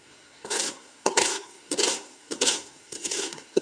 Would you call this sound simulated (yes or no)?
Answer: yes